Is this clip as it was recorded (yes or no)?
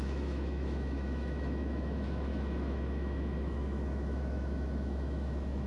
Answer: no